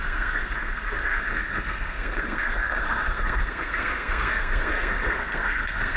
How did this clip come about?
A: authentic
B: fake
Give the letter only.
B